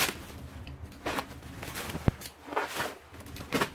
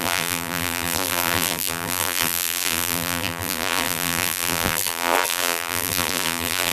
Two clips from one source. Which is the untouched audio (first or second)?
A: first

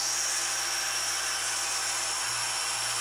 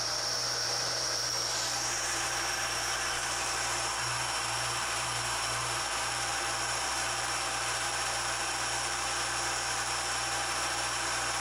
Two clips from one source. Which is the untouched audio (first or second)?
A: first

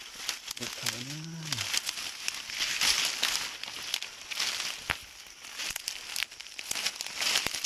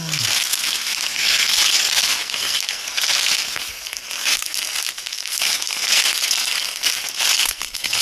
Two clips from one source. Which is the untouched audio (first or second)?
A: first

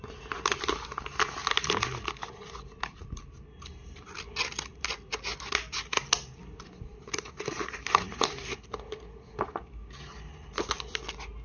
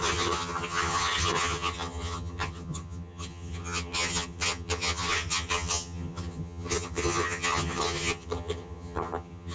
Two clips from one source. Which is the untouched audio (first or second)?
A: first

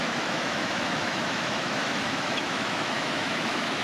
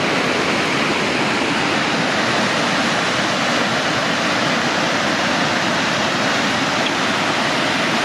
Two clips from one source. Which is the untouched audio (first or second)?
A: second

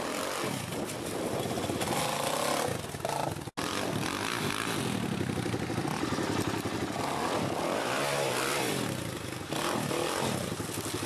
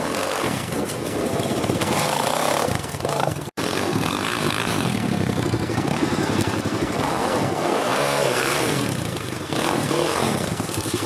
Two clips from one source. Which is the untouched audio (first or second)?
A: first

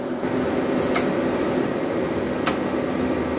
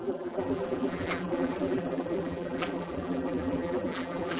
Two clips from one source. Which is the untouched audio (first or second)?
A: first